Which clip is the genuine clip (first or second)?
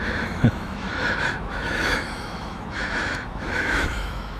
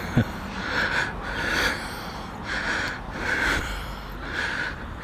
second